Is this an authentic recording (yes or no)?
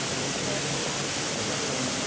yes